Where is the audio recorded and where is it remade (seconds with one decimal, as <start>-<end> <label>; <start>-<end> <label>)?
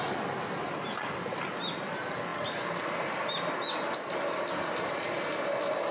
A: 0.0-5.9 recorded